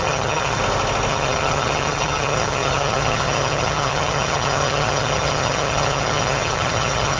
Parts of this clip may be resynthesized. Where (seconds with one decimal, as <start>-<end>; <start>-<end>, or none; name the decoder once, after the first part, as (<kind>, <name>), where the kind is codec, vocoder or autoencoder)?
0.0-0.6 (vocoder, HiFi-GAN); 1.1-7.2